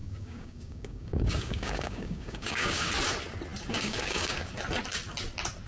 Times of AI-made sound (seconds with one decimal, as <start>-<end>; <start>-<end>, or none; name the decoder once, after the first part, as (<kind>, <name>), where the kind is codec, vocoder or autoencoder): 0.0-2.9 (codec, DAC); 3.7-4.5